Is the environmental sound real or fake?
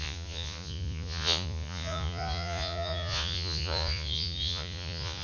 fake